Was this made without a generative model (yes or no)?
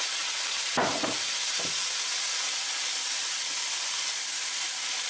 yes